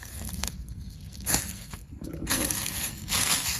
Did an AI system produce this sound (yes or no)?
yes